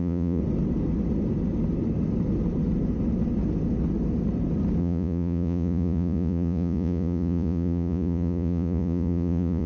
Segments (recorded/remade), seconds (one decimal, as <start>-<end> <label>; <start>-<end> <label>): 0.0-0.4 remade; 0.4-4.8 recorded; 4.8-9.7 remade